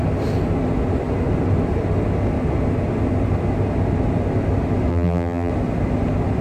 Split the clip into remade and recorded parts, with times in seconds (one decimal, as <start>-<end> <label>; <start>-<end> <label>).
0.0-4.9 recorded; 4.9-5.5 remade; 5.5-6.4 recorded

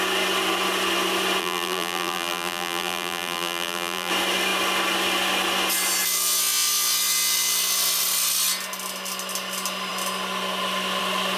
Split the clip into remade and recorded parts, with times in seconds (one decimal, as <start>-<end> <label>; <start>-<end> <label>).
0.0-1.4 recorded; 1.4-4.1 remade; 4.1-11.4 recorded

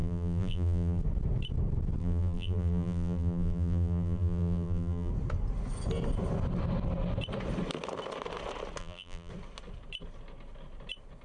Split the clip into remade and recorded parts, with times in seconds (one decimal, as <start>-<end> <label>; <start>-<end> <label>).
0.0-1.0 remade; 1.0-2.0 recorded; 2.0-5.1 remade; 5.1-8.8 recorded; 8.8-9.3 remade; 9.3-11.2 recorded

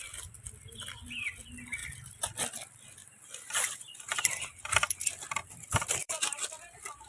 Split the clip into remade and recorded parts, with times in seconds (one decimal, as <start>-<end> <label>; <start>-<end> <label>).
0.0-1.8 recorded; 1.8-2.3 remade; 2.3-3.0 recorded; 3.0-6.2 remade; 6.2-7.1 recorded

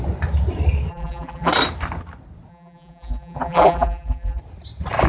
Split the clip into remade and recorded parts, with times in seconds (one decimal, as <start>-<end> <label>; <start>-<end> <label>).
0.0-0.9 recorded; 0.9-1.5 remade; 1.5-2.5 recorded; 2.5-4.4 remade; 4.4-5.1 recorded